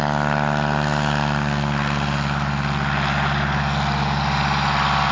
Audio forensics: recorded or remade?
recorded